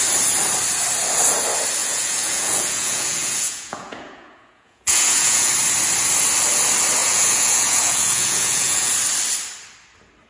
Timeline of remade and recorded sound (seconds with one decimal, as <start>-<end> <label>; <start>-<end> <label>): 0.0-1.8 recorded; 1.8-5.5 remade; 5.5-7.0 recorded; 7.0-8.9 remade; 8.9-10.3 recorded